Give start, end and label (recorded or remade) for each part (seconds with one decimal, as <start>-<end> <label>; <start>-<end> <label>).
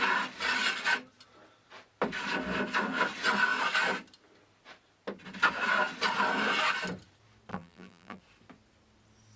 0.0-7.5 recorded; 7.5-8.2 remade; 8.2-9.4 recorded